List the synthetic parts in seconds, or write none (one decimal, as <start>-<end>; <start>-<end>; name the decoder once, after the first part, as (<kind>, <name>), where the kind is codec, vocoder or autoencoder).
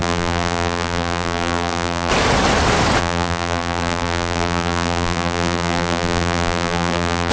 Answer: 0.0-2.1 (vocoder, BigVGAN v2); 3.0-7.3